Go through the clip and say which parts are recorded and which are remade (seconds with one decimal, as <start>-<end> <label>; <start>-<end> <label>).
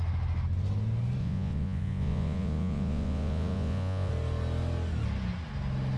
0.0-1.2 recorded; 1.2-4.1 remade; 4.1-6.0 recorded